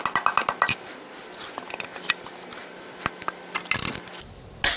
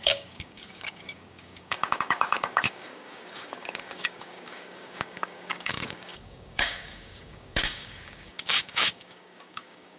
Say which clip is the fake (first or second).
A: second